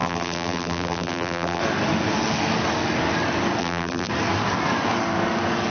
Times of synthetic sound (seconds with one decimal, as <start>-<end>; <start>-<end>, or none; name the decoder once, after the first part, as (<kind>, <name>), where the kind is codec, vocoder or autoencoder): 0.0-1.6 (vocoder, BigVGAN v2); 3.6-4.1